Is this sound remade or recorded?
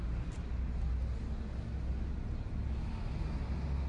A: recorded